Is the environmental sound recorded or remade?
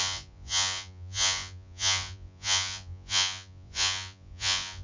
remade